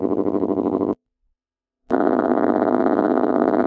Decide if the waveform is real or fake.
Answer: fake